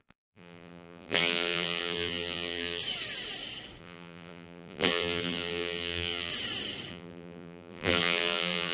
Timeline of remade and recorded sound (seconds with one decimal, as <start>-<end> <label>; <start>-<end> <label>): 0.0-2.8 remade; 2.8-3.8 recorded; 3.8-6.3 remade; 6.3-6.9 recorded; 6.9-8.7 remade